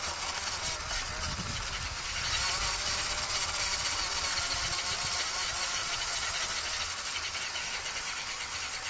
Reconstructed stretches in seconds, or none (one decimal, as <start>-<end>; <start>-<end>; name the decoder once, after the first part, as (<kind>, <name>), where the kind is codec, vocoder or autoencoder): 5.8-6.3 (vocoder, Vocos)